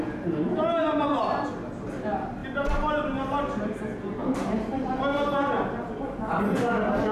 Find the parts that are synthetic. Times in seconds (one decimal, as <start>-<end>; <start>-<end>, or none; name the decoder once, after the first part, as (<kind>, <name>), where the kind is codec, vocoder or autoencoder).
2.4-3.8 (vocoder, BigVGAN v2); 4.2-4.9